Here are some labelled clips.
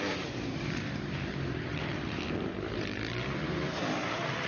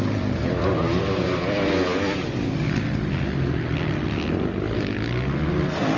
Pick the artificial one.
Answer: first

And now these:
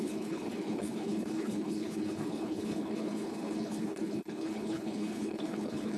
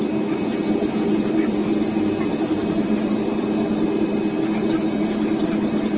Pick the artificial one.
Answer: first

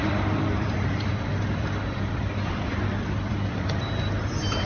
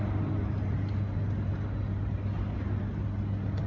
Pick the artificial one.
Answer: first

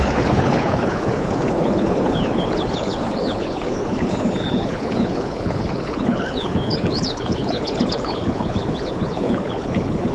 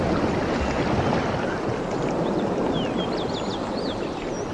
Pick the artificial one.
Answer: first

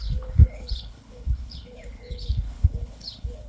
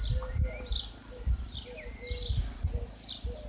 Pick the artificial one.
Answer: first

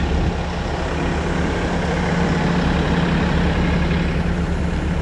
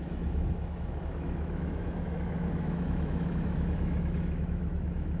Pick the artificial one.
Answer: second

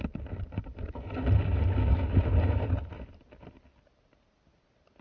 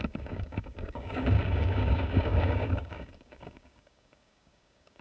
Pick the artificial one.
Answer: second